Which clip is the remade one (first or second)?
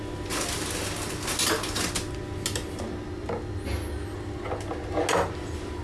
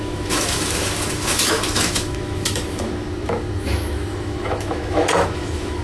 second